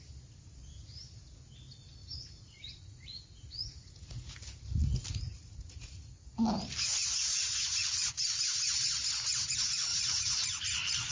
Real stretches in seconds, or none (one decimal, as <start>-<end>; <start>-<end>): 0.0-2.0; 4.3-5.3; 6.3-7.8; 8.4-9.9